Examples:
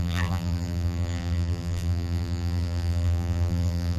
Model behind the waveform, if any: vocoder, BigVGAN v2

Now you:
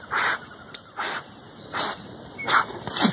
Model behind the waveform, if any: vocoder, BigVGAN v2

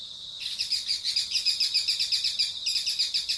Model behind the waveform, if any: none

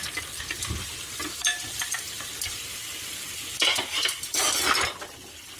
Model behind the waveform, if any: vocoder, BigVGAN v2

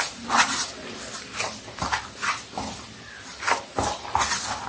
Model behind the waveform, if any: none